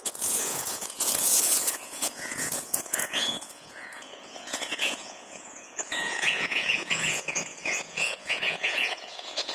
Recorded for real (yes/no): no